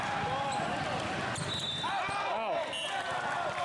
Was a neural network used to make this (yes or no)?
no